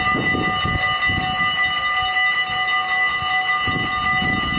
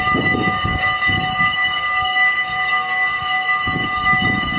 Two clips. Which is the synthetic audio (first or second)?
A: second